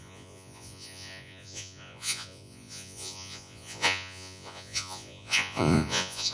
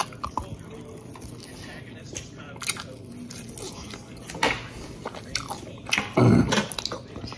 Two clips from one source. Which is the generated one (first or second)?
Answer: first